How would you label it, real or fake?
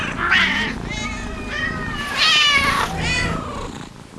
real